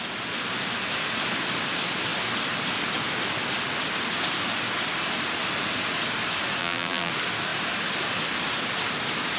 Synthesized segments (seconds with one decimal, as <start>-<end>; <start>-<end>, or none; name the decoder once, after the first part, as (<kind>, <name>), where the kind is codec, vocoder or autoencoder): 6.6-7.1 (vocoder, BigVGAN v2)

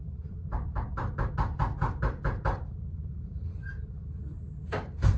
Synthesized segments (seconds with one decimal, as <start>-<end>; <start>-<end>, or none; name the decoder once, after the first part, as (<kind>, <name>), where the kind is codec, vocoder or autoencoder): 0.0-1.3 (vocoder, BigVGAN v2); 1.8-3.6

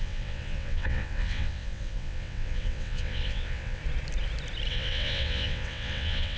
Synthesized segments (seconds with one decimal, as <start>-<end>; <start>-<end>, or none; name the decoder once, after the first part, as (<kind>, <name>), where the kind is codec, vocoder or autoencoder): 0.0-3.8 (vocoder, WaveNeXt); 4.7-6.4

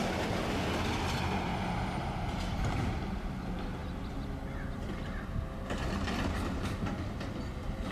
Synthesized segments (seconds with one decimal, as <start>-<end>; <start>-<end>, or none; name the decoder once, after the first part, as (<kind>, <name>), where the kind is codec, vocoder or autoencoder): none

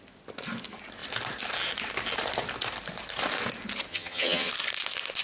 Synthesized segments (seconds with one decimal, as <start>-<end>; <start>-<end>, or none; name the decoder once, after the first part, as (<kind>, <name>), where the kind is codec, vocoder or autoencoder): 3.9-4.5 (vocoder, HiFi-GAN)